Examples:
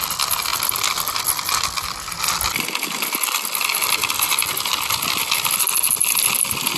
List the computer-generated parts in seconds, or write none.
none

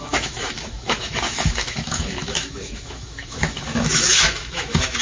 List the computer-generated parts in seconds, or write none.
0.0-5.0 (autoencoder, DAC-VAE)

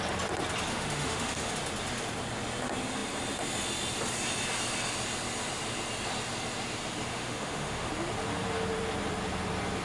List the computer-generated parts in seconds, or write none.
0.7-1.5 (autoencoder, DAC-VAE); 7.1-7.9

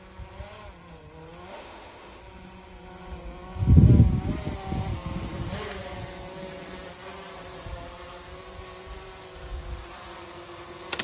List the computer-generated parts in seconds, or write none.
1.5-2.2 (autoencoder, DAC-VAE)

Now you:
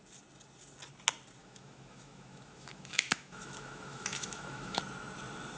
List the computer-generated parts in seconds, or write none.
1.4-4.8 (autoencoder, DAC-VAE)

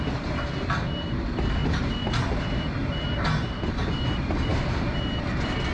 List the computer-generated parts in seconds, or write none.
none

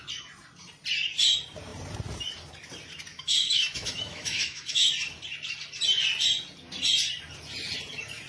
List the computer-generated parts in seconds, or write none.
3.1-4.9 (autoencoder, DAC-VAE)

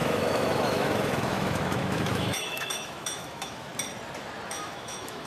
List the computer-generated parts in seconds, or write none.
0.0-3.7 (autoencoder, DAC-VAE); 4.5-5.3